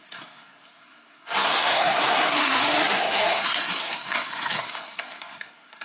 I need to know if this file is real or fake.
fake